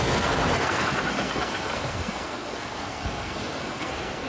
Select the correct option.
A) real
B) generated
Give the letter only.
B